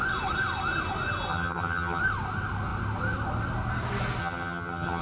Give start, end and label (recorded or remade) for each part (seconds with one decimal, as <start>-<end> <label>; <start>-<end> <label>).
0.0-1.3 recorded; 1.3-2.0 remade; 2.0-4.2 recorded; 4.2-5.0 remade